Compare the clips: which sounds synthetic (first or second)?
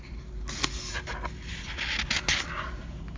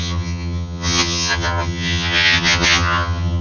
second